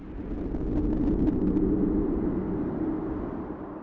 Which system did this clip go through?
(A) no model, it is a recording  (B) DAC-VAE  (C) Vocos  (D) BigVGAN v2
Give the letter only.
A